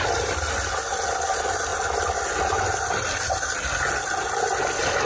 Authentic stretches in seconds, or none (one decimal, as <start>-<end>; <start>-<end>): 0.0-5.1

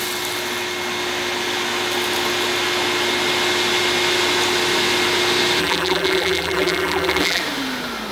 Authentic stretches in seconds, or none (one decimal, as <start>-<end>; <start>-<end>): 0.0-5.6; 7.4-8.1

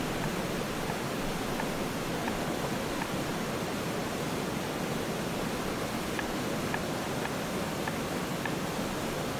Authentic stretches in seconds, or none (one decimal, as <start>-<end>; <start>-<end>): 0.0-9.4

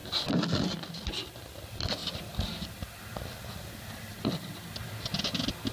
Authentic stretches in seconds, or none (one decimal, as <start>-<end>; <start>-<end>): 0.0-5.7

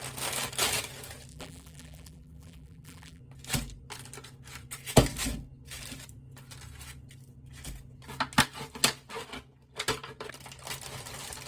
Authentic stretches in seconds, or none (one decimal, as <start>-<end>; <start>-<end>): 0.0-1.3; 3.2-11.5

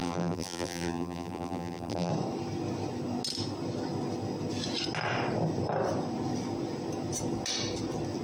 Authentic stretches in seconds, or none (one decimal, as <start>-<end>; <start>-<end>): 2.1-8.2

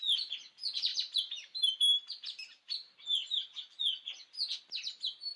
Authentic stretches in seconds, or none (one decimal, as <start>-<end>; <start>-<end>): 0.0-0.9; 3.8-5.4

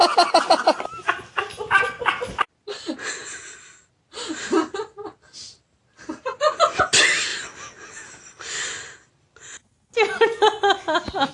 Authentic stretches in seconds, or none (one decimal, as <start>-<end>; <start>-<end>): 0.0-11.3